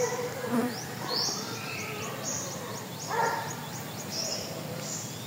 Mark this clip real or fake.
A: fake